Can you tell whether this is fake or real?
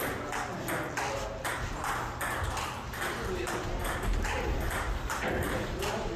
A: real